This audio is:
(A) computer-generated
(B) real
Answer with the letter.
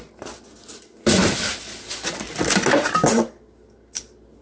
B